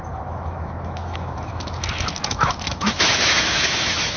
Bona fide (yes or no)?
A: no